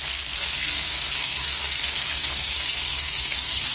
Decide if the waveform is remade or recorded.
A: remade